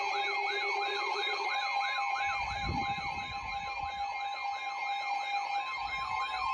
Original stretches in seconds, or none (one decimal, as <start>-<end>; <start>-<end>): 0.0-0.9; 1.6-6.5